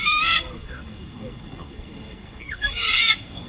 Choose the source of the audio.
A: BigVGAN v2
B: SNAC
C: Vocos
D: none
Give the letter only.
B